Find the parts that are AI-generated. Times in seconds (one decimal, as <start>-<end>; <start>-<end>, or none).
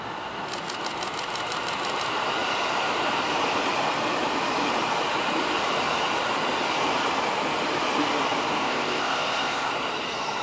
8.6-9.7